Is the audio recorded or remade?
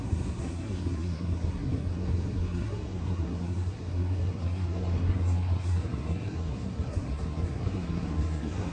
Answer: remade